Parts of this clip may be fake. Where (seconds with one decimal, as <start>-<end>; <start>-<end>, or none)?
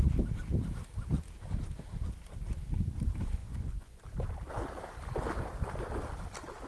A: 3.4-4.0